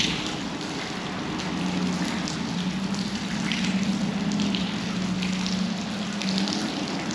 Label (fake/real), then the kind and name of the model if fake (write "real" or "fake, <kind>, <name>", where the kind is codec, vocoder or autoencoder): real